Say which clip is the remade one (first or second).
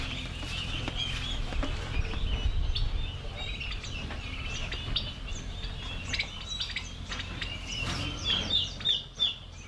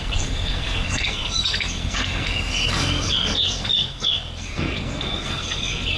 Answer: second